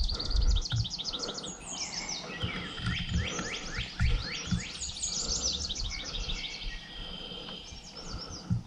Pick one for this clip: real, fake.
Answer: real